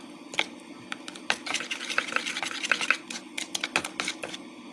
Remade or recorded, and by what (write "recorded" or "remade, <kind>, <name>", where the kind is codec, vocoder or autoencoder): recorded